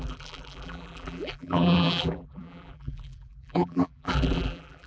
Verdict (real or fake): fake